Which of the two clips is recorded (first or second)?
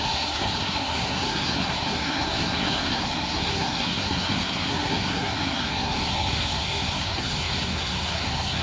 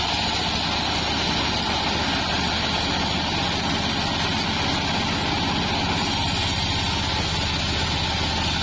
second